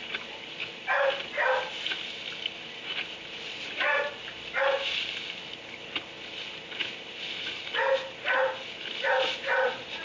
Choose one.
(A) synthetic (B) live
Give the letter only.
B